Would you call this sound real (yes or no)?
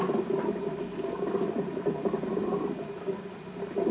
yes